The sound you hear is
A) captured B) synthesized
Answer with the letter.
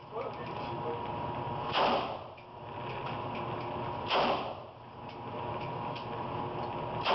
A